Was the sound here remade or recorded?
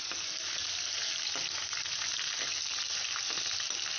recorded